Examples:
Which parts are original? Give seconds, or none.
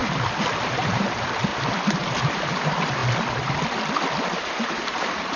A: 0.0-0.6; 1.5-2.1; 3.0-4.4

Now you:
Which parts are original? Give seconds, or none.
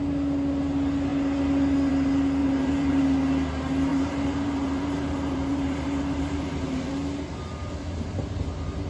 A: 0.0-2.4; 3.0-3.9; 6.9-8.9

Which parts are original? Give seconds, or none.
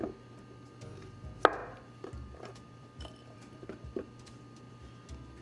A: 0.0-1.6; 4.8-5.4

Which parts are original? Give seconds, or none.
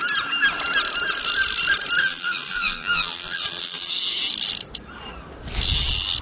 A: 0.0-2.0; 3.9-6.2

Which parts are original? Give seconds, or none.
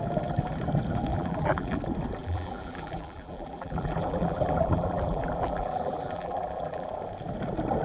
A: 0.0-1.1; 1.8-2.2; 6.9-7.8